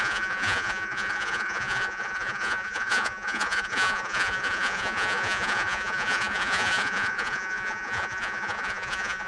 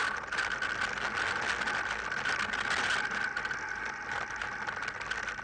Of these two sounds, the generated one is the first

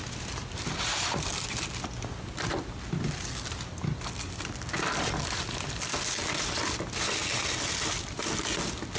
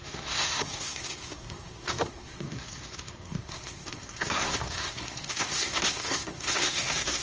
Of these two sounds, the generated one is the second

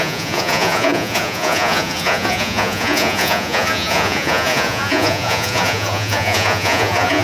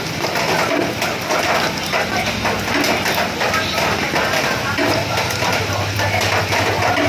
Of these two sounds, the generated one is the first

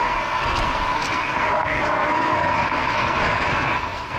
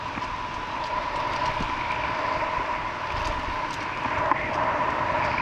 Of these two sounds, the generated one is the first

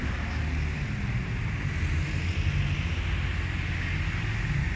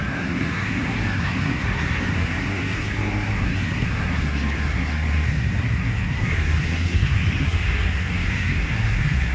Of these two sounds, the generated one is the second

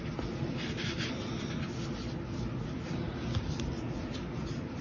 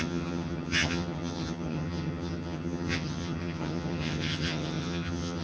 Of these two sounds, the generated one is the second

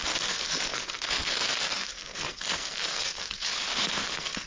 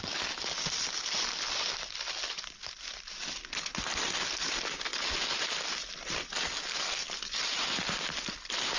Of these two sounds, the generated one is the first